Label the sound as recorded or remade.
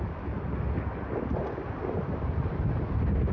recorded